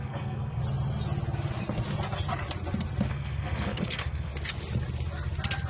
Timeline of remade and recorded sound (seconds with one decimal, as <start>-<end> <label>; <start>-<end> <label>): 0.0-0.6 remade; 0.6-3.1 recorded; 3.1-4.3 remade; 4.3-5.7 recorded